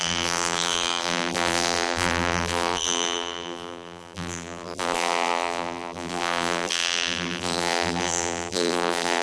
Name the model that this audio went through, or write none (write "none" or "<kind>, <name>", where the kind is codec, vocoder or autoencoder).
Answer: vocoder, BigVGAN v2